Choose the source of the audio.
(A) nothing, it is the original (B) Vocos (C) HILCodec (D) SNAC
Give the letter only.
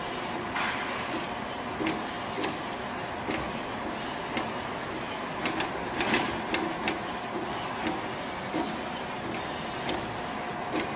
A